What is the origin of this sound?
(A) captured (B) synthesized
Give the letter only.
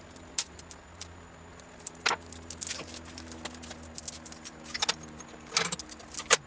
A